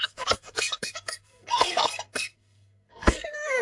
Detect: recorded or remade remade